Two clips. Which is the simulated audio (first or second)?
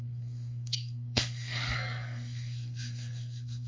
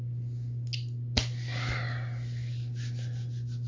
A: first